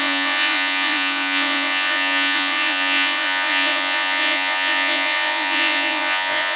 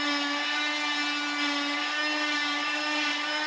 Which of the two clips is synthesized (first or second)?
first